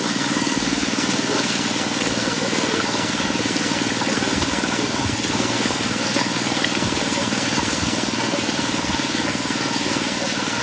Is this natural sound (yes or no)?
no